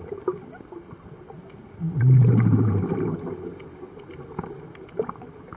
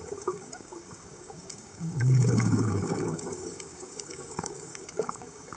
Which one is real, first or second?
first